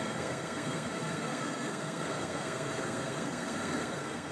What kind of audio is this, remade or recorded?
remade